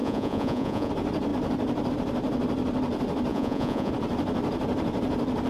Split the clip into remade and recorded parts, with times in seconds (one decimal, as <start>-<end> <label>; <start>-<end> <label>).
0.0-0.9 remade; 0.9-3.3 recorded; 3.3-3.9 remade; 3.9-5.5 recorded